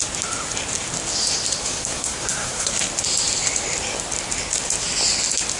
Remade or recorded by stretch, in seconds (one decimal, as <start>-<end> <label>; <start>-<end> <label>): 0.0-1.6 recorded; 1.6-2.7 remade; 2.7-5.6 recorded